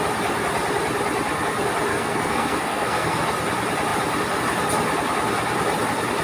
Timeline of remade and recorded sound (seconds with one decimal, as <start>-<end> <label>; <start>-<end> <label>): 0.0-1.9 recorded; 1.9-3.2 remade; 3.2-6.2 recorded